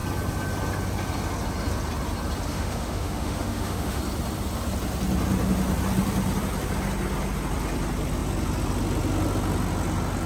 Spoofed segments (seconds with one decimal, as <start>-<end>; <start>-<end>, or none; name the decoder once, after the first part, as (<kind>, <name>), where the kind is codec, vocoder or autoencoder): 2.5-4.0 (autoencoder, DAC-VAE)